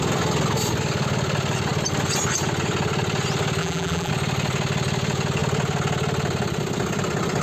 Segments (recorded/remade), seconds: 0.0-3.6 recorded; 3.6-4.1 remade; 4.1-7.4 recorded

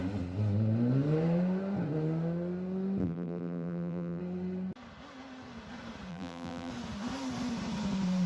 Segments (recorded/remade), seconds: 0.0-3.0 recorded; 3.0-4.2 remade; 4.2-6.1 recorded; 6.1-6.7 remade; 6.7-8.3 recorded

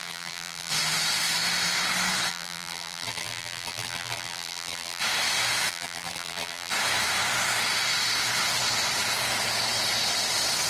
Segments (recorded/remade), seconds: 0.0-0.7 remade; 0.7-2.3 recorded; 2.3-5.0 remade; 5.0-5.7 recorded; 5.7-6.7 remade; 6.7-10.7 recorded

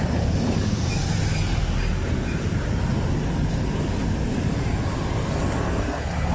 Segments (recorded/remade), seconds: 0.0-6.3 recorded

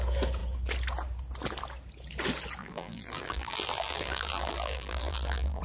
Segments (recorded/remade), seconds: 0.0-2.6 recorded; 2.6-5.6 remade

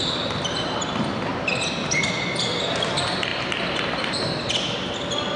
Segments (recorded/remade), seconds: 0.0-1.3 remade; 1.3-5.4 recorded